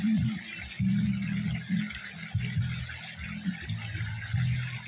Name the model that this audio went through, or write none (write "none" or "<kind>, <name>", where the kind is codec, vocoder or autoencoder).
none